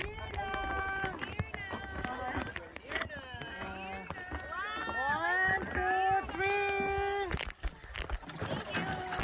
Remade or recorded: recorded